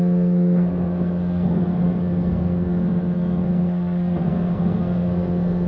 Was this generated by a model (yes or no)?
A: yes